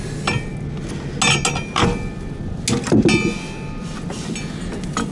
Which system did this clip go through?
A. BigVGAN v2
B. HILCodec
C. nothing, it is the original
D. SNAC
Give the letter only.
C